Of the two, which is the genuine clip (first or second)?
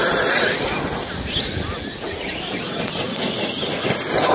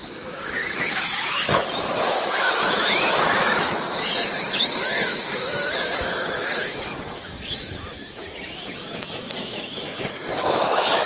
first